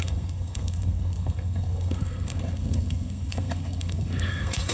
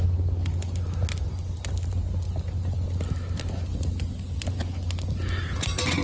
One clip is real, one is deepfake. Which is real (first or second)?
second